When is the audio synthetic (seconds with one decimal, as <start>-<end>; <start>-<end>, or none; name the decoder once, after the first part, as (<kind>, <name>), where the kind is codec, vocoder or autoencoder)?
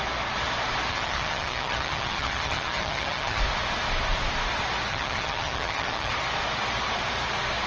0.9-3.4 (vocoder, HiFi-GAN); 4.9-6.1